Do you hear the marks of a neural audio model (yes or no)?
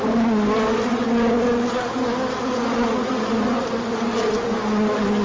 no